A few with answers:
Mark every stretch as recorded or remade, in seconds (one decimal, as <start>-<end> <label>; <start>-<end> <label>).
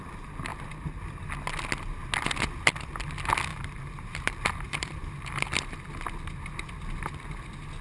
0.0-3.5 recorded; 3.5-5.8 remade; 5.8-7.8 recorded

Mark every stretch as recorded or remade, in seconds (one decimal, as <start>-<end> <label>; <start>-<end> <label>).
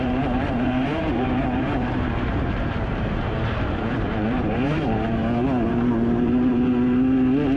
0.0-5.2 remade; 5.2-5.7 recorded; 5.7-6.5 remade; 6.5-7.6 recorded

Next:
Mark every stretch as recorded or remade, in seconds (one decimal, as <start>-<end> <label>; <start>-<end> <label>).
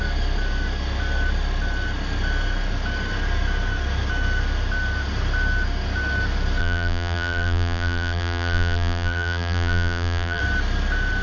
0.0-6.6 recorded; 6.6-10.4 remade; 10.4-11.2 recorded